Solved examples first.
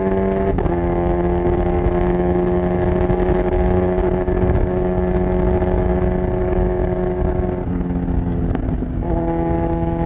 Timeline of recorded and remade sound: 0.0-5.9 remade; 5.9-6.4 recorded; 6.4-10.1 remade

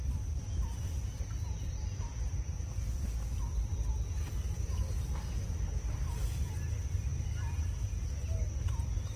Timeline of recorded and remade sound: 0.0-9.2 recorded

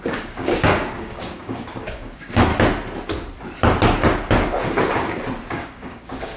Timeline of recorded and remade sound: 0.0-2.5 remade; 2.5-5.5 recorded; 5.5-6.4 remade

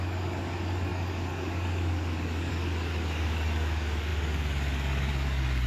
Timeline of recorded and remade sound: 0.0-5.7 remade

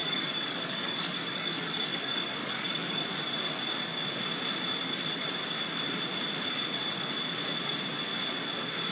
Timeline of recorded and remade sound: 0.0-3.0 remade; 3.0-8.9 recorded

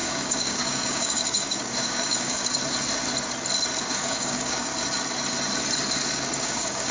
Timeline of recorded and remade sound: 0.0-2.6 remade; 2.6-3.8 recorded; 3.8-4.7 remade; 4.7-6.4 recorded; 6.4-6.9 remade

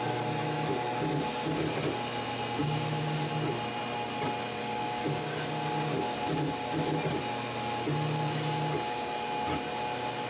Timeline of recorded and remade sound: 0.0-2.6 recorded; 2.6-3.3 remade; 3.3-4.6 recorded; 4.6-5.4 remade; 5.4-10.3 recorded

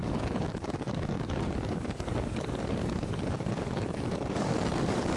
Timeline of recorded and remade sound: 0.0-5.2 remade